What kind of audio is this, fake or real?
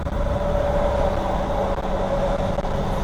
real